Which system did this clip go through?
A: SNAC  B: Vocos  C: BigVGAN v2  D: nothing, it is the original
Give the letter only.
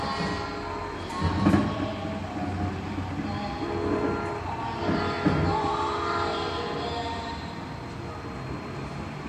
D